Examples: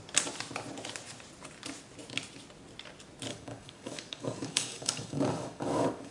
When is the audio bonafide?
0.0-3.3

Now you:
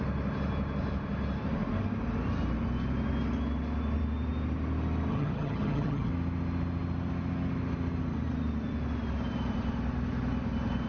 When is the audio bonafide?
0.0-5.1; 6.1-10.9